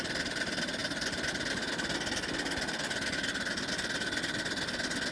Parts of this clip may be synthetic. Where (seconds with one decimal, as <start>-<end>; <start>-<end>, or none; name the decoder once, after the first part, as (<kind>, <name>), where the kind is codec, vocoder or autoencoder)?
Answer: none